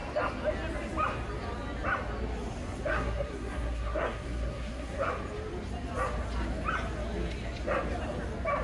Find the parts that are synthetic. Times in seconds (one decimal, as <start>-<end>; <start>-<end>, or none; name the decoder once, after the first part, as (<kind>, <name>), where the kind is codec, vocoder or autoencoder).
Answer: 2.9-5.1 (codec, SNAC)